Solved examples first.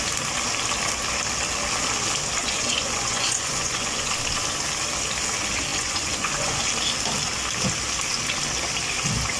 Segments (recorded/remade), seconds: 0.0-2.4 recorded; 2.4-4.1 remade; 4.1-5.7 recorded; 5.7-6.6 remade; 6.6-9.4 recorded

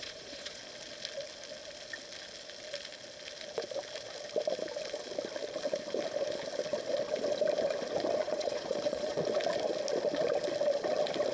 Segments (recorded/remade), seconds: 0.0-0.6 remade; 0.6-8.2 recorded; 8.2-9.2 remade; 9.2-11.3 recorded

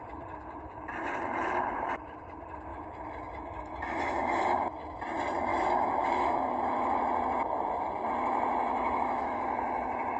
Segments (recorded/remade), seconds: 0.0-2.7 recorded; 2.7-5.0 remade; 5.0-5.5 recorded; 5.5-7.0 remade; 7.0-8.7 recorded; 8.7-9.4 remade; 9.4-10.2 recorded

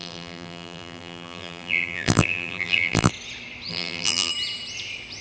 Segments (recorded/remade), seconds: 0.0-3.1 remade; 3.1-3.7 recorded; 3.7-4.3 remade; 4.3-5.2 recorded

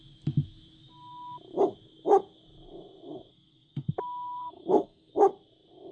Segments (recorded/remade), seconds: 0.0-3.3 recorded; 3.3-3.9 remade; 3.9-4.4 recorded; 4.4-5.1 remade; 5.1-5.9 recorded